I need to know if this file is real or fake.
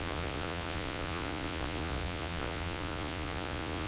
fake